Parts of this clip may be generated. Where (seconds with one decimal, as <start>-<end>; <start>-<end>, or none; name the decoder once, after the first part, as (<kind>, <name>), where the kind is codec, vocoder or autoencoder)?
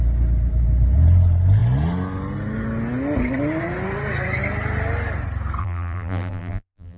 5.6-7.0 (vocoder, BigVGAN v2)